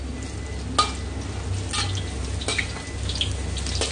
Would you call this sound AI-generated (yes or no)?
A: no